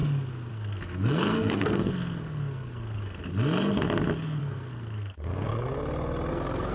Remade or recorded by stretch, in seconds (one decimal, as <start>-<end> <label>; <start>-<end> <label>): 0.0-0.5 recorded; 0.5-3.2 remade; 3.2-4.4 recorded; 4.4-5.5 remade; 5.5-6.3 recorded; 6.3-6.7 remade